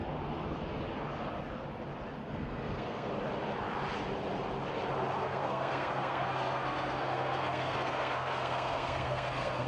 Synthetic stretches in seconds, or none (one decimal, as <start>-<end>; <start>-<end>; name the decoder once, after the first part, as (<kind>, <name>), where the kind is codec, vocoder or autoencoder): 2.2-3.1 (codec, SNAC); 5.2-9.7